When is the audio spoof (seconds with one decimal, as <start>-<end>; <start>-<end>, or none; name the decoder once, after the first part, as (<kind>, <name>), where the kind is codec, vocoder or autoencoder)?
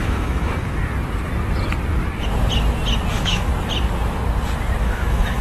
0.0-0.8 (autoencoder, DAC-VAE); 3.1-3.5; 4.8-5.4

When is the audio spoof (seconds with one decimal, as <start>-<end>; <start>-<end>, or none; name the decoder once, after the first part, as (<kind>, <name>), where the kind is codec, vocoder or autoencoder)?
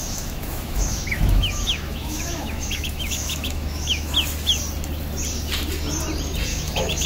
0.0-4.1 (autoencoder, DAC-VAE); 6.5-7.1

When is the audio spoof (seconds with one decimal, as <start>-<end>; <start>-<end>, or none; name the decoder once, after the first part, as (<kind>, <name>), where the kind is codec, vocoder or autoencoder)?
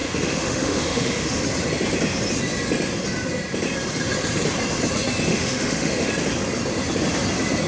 0.0-1.4 (autoencoder, DAC-VAE); 5.3-6.1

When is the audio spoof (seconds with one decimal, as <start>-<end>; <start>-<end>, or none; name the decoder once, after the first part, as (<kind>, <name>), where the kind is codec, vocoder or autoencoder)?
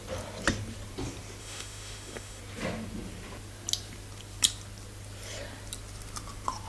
1.4-2.4 (autoencoder, DAC-VAE)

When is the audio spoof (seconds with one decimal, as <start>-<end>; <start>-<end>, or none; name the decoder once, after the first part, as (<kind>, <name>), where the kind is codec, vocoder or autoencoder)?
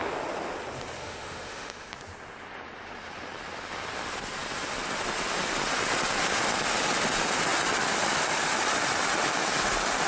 1.0-1.9 (autoencoder, DAC-VAE)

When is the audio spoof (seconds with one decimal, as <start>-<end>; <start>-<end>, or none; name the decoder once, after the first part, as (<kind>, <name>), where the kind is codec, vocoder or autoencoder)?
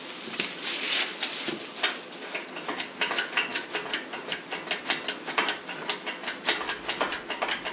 none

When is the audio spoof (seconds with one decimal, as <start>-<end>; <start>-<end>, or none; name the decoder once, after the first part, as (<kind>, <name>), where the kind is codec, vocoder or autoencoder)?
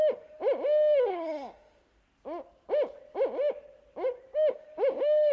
0.0-0.4 (autoencoder, DAC-VAE); 1.1-2.0; 4.5-5.3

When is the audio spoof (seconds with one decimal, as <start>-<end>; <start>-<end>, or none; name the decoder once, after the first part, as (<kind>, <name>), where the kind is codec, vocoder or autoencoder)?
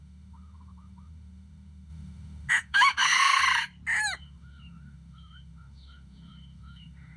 0.0-3.4 (autoencoder, DAC-VAE); 4.2-7.2